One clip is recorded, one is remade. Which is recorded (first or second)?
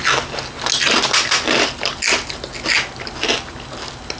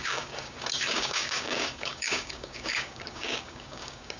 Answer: first